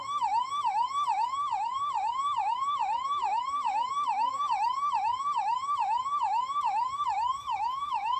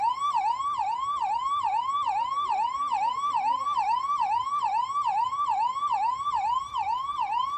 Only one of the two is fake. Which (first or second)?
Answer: first